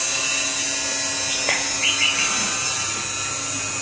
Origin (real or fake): real